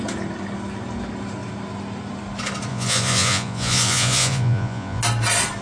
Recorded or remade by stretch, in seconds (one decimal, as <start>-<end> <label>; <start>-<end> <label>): 0.0-2.7 recorded; 2.7-5.0 remade; 5.0-5.6 recorded